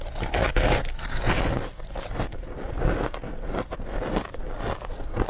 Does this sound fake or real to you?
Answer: real